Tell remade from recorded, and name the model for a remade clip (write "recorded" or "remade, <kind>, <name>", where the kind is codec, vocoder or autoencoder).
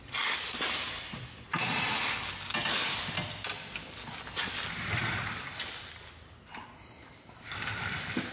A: recorded